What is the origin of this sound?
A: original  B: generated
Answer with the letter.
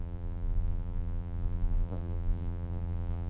B